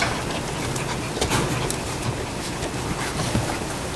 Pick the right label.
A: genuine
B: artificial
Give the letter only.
A